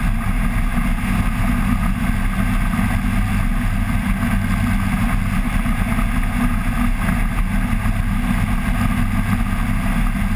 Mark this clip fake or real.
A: real